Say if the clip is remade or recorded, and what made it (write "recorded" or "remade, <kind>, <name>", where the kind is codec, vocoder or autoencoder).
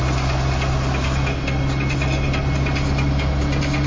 recorded